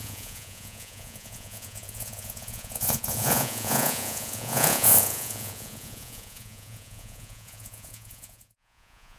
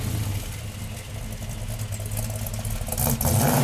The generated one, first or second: first